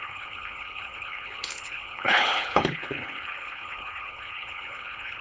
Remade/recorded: remade